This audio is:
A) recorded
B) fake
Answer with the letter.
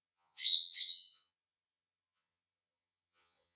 B